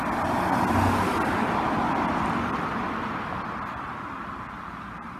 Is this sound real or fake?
real